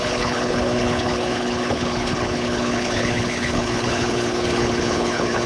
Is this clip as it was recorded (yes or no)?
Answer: no